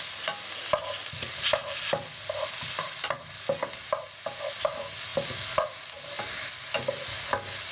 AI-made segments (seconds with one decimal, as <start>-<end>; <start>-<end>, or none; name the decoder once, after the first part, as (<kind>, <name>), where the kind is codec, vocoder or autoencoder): none